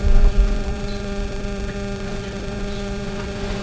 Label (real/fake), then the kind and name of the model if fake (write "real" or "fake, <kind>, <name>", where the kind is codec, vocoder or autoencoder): fake, vocoder, Vocos